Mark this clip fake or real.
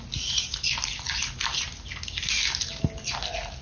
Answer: real